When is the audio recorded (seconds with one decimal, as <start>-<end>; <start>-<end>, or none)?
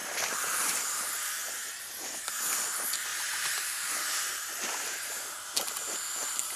2.4-3.1